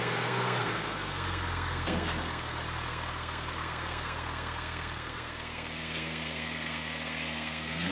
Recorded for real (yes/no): no